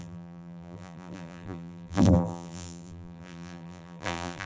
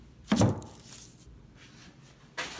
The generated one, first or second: first